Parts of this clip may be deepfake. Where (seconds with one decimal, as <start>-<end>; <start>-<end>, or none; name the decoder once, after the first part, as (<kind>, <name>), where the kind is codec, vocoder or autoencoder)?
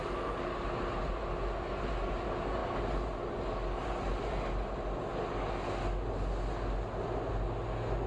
none